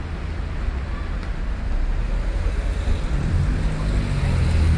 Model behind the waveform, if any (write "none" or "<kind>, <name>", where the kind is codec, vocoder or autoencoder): none